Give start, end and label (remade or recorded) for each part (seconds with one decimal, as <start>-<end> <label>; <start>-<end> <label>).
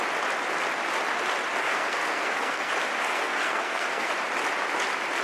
0.0-1.6 recorded; 1.6-2.7 remade; 2.7-3.1 recorded; 3.1-4.1 remade; 4.1-5.2 recorded